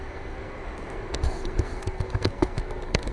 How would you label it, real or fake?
fake